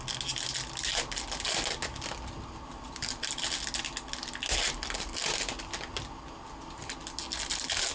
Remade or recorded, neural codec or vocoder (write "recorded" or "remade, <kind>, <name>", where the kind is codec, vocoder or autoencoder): recorded